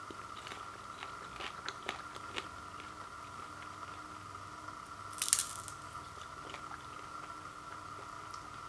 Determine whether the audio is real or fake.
real